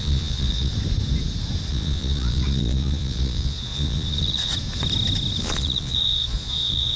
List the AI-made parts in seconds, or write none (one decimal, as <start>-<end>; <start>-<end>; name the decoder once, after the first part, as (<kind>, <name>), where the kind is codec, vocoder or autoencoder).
0.0-0.7 (vocoder, Vocos); 1.7-4.5; 5.4-7.0